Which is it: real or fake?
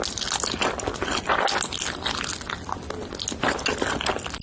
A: real